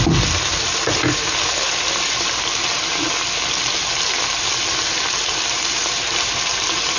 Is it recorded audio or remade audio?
recorded